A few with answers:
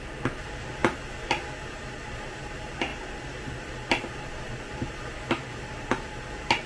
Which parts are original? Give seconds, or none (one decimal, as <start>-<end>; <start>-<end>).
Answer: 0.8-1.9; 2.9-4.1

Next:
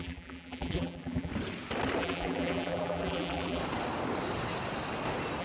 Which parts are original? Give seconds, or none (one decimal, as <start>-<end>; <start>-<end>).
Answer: 1.3-2.0; 3.6-5.4

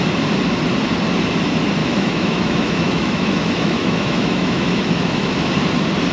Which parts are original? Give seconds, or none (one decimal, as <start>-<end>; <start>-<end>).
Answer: 0.0-1.8; 5.5-6.1